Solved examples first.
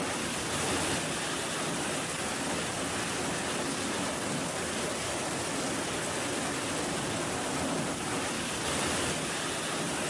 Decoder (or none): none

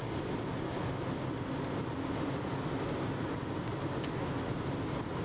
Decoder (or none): none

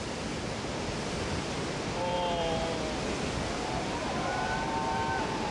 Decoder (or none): none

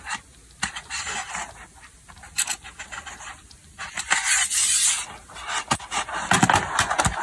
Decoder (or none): none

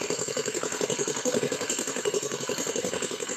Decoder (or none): codec, SNAC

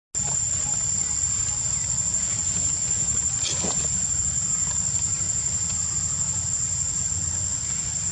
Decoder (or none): none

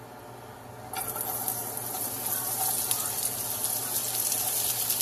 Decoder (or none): none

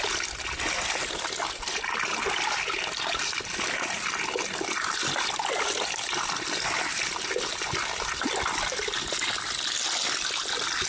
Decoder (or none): none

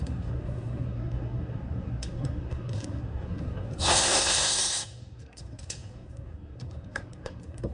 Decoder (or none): codec, SNAC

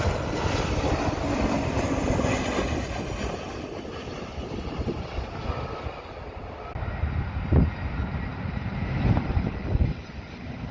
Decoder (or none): none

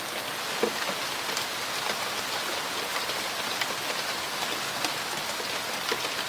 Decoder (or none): none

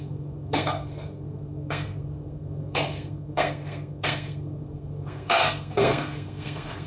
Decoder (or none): codec, SNAC